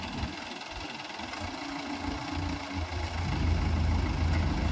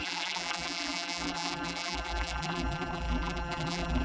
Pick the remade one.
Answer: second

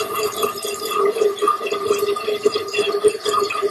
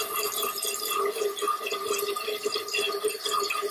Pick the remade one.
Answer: first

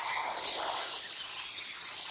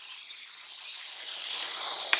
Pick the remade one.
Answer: second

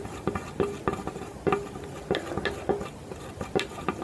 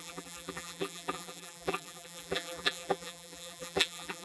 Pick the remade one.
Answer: second